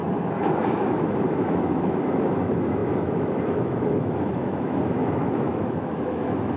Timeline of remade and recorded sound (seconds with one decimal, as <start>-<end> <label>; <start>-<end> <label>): 0.0-0.7 recorded; 0.7-6.6 remade